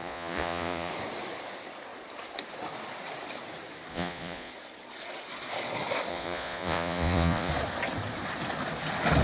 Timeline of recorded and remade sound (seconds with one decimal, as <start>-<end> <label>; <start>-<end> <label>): 0.0-0.9 remade; 0.9-3.9 recorded; 3.9-4.5 remade; 4.5-6.1 recorded; 6.1-7.5 remade; 7.5-9.2 recorded